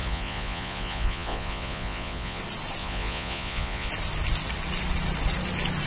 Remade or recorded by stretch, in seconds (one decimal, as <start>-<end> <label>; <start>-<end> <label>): 0.0-2.4 remade; 2.4-2.8 recorded; 2.8-3.9 remade; 3.9-5.9 recorded